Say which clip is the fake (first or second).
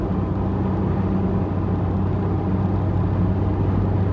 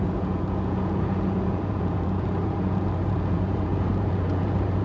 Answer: second